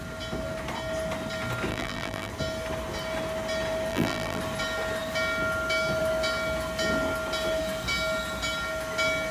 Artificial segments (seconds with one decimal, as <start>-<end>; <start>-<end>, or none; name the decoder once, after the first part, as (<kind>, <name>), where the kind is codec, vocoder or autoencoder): 1.7-2.3 (vocoder, BigVGAN v2); 3.9-4.4